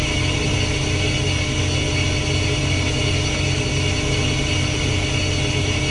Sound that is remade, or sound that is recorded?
recorded